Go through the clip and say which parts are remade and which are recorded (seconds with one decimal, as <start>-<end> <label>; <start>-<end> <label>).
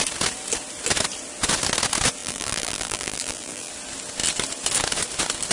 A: 0.0-2.2 recorded; 2.2-3.7 remade; 3.7-5.5 recorded